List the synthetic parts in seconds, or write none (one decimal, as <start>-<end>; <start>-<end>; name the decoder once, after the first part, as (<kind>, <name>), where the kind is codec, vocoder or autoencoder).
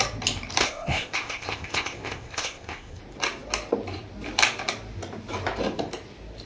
0.6-3.0 (codec, ZipCodec)